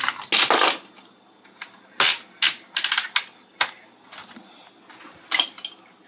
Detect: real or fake real